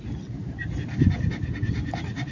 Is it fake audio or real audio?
real